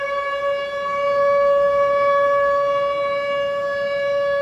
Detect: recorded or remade recorded